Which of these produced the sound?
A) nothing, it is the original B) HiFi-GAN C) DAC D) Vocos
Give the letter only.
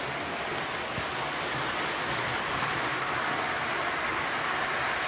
A